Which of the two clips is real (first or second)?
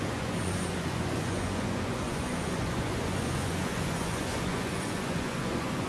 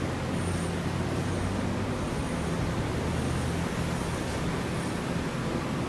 second